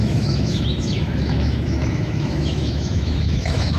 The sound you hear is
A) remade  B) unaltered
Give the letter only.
A